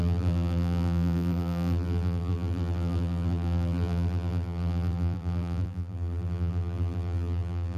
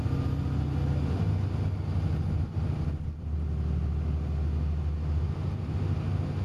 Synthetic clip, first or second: first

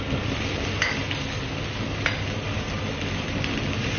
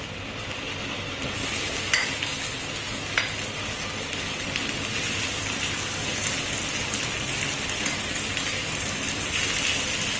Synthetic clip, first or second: first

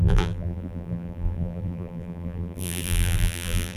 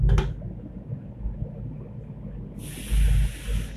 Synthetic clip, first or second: first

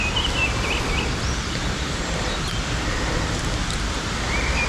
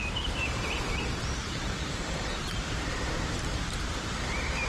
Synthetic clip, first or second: second